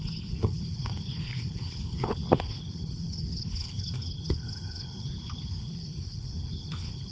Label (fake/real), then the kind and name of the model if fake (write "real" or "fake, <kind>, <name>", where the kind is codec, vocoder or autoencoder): fake, codec, HILCodec